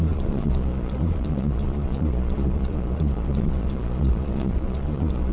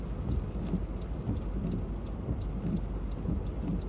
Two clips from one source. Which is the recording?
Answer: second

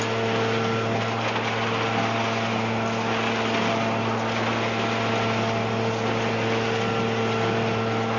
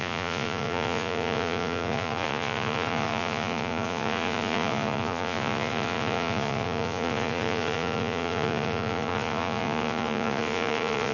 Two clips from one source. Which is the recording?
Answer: first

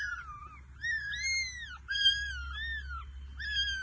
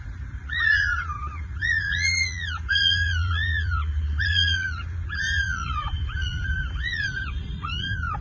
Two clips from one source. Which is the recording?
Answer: first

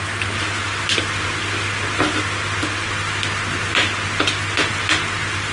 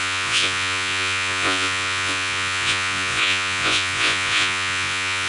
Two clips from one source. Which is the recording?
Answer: first